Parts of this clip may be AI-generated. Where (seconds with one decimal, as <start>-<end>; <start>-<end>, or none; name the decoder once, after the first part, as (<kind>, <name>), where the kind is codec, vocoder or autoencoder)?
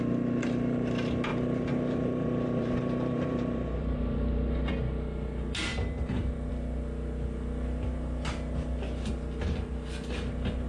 1.3-4.7 (vocoder, BigVGAN v2); 5.7-6.5